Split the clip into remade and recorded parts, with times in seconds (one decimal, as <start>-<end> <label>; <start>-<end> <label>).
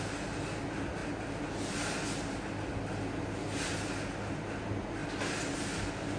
0.0-6.2 recorded